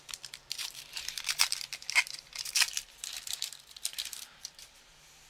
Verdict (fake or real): fake